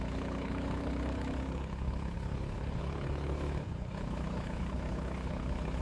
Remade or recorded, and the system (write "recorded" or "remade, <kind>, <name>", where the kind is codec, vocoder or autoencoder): remade, codec, HILCodec